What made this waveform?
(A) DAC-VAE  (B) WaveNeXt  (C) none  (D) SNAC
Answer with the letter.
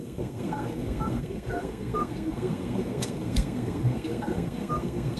D